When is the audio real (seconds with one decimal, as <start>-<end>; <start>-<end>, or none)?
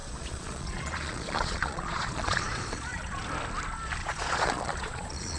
3.2-4.0